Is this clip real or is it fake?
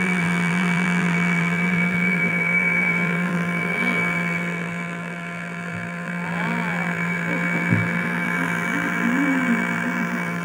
fake